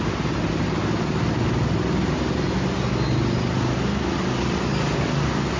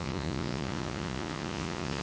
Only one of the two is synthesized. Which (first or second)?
second